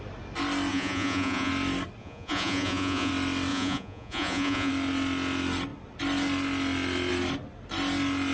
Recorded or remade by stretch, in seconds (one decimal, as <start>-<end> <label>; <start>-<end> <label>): 0.0-0.7 recorded; 0.7-1.5 remade; 1.5-2.0 recorded; 2.0-3.1 remade; 3.1-3.5 recorded; 3.5-4.7 remade; 4.7-8.3 recorded